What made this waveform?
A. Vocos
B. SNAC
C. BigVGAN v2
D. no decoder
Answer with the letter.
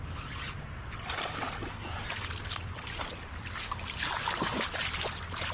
D